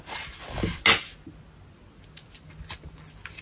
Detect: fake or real real